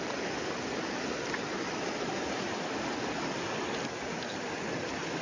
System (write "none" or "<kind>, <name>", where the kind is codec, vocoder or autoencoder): none